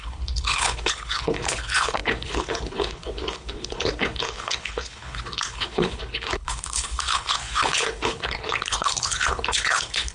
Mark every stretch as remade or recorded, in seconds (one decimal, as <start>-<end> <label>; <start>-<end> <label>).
0.0-10.1 remade